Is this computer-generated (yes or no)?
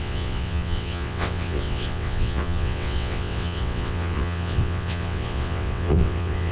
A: yes